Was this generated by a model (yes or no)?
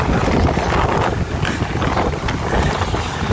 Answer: no